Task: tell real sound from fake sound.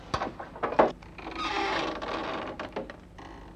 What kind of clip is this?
real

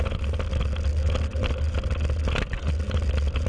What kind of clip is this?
real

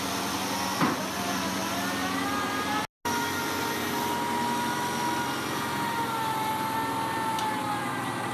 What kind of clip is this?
real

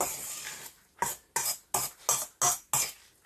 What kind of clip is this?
real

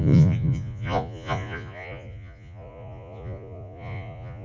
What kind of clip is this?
fake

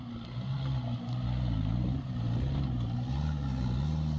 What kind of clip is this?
real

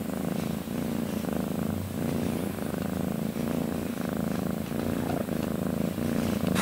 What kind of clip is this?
real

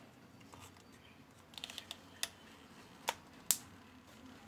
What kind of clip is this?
real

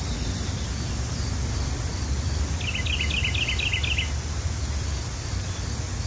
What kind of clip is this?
real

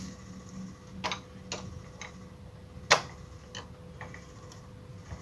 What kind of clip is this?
real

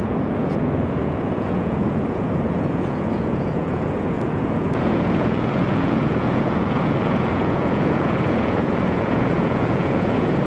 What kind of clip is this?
fake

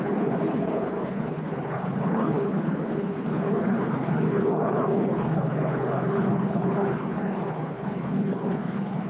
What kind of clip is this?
fake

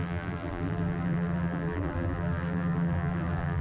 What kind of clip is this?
fake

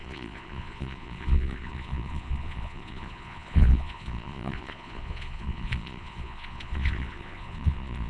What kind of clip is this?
fake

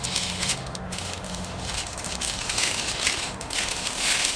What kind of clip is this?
fake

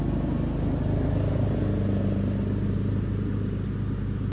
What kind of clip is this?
real